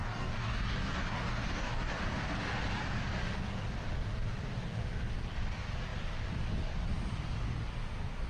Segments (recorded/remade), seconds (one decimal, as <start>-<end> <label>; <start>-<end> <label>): 0.0-2.0 remade; 2.0-8.3 recorded